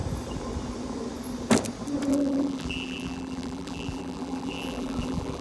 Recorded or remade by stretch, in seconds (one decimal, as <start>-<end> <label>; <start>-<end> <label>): 0.0-2.1 recorded; 2.1-5.4 remade